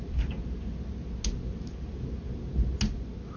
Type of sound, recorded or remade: recorded